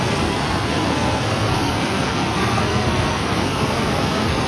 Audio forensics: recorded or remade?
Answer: remade